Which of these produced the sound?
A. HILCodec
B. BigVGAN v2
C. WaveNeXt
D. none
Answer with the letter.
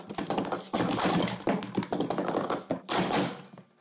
D